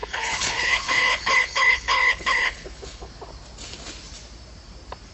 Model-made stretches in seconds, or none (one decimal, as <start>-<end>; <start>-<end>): 0.0-3.1